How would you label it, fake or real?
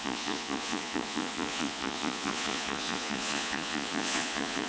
fake